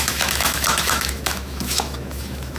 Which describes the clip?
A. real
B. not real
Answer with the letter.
B